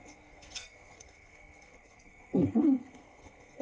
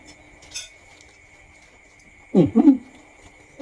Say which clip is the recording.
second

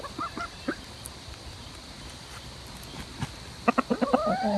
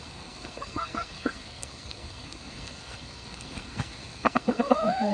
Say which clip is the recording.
first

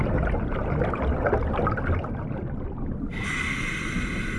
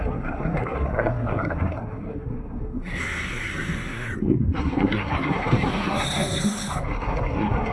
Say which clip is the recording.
first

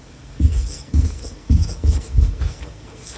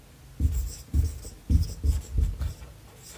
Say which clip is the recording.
second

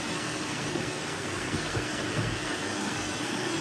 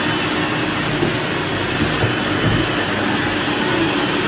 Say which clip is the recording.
second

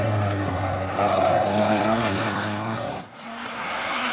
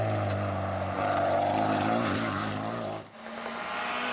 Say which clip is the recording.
second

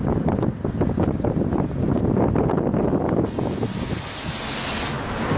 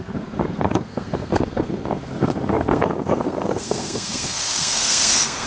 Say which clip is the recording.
first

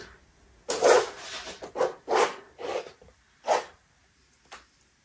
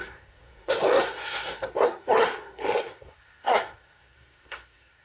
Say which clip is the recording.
first